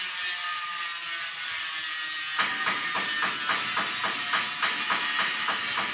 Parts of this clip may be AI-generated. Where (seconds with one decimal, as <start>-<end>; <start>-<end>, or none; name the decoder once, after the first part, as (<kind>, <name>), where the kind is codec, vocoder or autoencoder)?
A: none